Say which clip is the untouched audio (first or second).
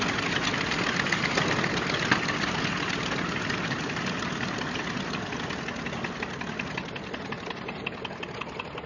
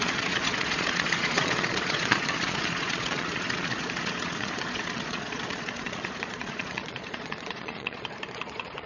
first